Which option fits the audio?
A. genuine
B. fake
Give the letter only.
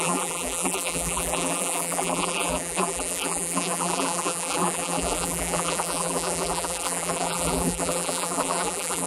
B